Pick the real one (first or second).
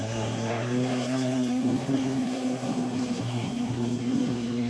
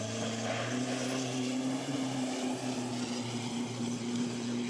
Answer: second